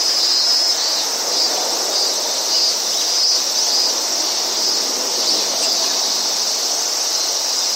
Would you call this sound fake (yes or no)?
no